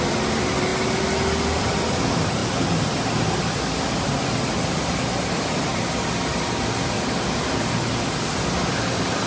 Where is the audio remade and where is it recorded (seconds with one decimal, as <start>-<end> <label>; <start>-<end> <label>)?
0.0-0.7 remade; 0.7-1.6 recorded; 1.6-2.4 remade; 2.4-4.0 recorded; 4.0-5.7 remade; 5.7-7.0 recorded; 7.0-9.3 remade